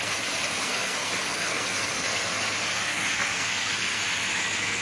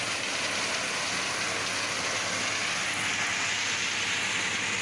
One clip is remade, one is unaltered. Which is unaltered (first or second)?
second